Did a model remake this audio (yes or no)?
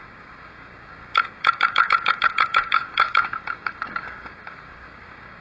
yes